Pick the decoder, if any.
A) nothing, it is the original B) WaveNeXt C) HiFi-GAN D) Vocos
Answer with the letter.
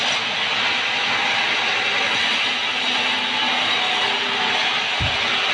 A